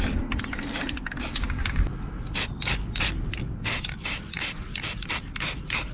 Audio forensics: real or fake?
real